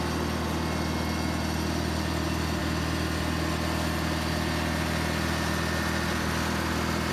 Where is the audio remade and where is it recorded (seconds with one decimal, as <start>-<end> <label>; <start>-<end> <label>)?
0.0-7.1 recorded

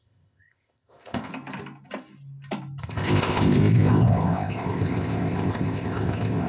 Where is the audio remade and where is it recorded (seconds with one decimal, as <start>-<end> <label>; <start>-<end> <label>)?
0.0-1.3 remade; 1.3-2.8 recorded; 2.8-6.5 remade

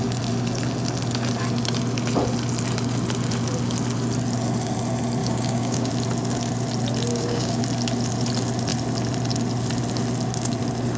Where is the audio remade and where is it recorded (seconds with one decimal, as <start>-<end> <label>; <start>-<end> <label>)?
0.0-5.2 recorded; 5.2-5.9 remade; 5.9-7.1 recorded; 7.1-7.6 remade; 7.6-11.0 recorded